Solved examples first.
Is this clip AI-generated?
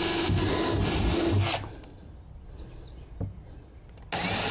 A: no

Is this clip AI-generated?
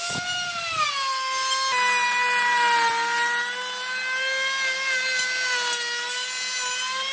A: no